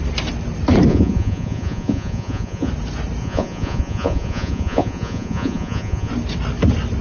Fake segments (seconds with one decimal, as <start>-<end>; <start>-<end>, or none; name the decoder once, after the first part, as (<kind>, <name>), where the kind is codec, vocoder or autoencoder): 0.9-2.7 (vocoder, Vocos); 3.2-6.1